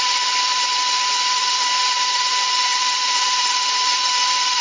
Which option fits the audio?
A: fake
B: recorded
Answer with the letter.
B